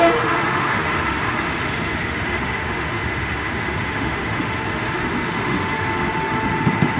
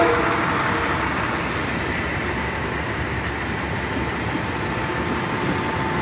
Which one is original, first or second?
second